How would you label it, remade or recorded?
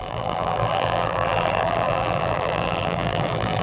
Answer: remade